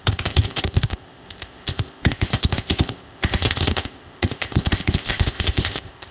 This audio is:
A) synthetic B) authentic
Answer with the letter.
A